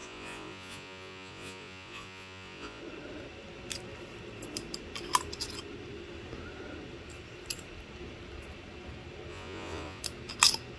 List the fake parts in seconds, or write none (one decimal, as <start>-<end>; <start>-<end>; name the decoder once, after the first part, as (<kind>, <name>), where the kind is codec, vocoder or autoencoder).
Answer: 0.0-2.8 (vocoder, Vocos); 9.3-10.0